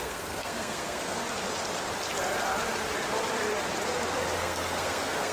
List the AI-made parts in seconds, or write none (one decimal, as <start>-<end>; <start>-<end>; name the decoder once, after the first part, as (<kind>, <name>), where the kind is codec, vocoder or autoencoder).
0.0-1.2 (codec, SNAC); 4.4-5.3

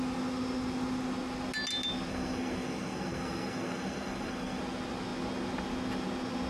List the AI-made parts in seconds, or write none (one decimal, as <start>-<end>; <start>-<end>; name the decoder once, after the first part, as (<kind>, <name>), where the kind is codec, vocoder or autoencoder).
2.1-4.6 (codec, SNAC)

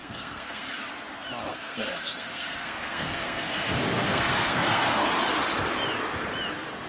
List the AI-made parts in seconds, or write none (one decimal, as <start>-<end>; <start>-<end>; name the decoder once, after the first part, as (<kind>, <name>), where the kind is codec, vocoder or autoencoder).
0.0-0.8 (codec, SNAC); 1.5-5.1

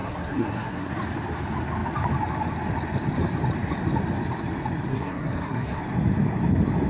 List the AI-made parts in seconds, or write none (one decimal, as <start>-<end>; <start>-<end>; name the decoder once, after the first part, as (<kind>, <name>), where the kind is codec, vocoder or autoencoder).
0.0-0.9 (codec, SNAC); 4.9-5.8

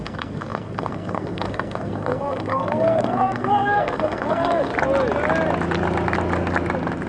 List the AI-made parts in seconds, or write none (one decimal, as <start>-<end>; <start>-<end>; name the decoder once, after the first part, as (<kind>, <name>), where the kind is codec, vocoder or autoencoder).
0.0-4.7 (codec, SNAC)